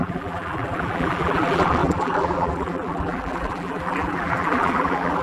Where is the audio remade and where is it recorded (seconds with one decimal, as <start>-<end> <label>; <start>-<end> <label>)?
0.0-5.2 remade